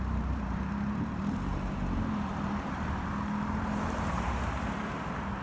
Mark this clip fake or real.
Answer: fake